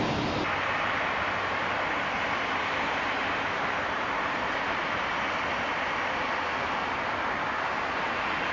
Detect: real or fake real